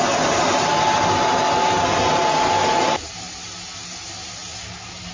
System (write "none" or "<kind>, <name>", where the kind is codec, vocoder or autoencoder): none